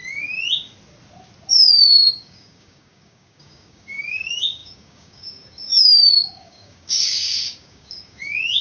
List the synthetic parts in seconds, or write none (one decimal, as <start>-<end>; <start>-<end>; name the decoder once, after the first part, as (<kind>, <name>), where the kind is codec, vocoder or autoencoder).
1.5-8.6 (codec, DAC)